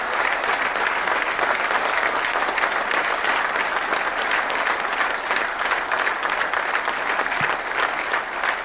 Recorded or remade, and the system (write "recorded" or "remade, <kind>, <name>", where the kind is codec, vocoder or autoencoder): recorded